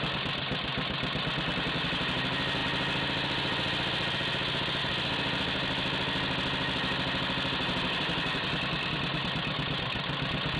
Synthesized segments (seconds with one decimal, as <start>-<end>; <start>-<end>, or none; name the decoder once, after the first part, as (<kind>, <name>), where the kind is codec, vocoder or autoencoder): none